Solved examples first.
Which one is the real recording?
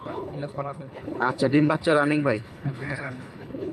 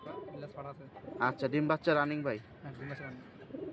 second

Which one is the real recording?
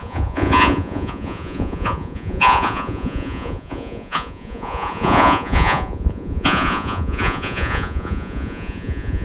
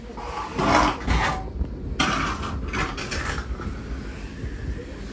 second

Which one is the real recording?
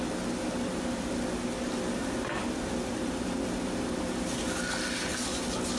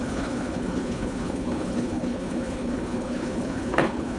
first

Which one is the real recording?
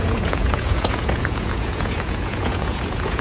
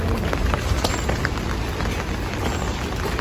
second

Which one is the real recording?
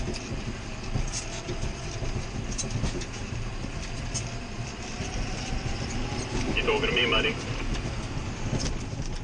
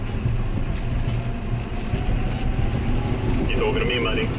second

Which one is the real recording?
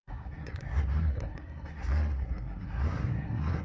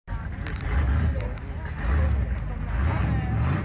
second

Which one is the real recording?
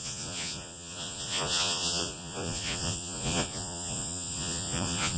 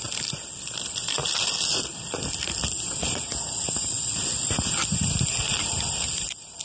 second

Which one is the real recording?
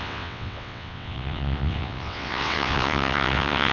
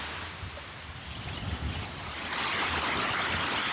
second